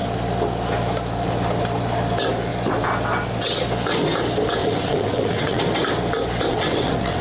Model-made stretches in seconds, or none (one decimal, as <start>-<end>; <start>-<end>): 4.6-5.6; 6.5-7.2